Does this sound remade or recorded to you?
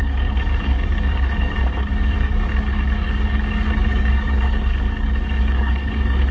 remade